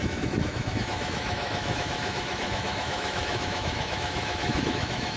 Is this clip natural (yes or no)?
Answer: no